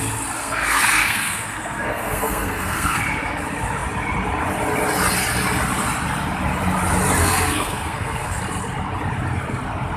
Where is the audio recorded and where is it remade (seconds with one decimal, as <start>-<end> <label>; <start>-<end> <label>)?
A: 0.0-0.4 recorded; 0.4-3.0 remade; 3.0-7.2 recorded; 7.2-8.4 remade; 8.4-10.0 recorded

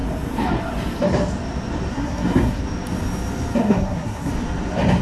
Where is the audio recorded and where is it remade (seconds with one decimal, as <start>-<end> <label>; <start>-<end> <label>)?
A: 0.0-1.9 recorded; 1.9-2.6 remade; 2.6-3.6 recorded; 3.6-4.3 remade; 4.3-5.0 recorded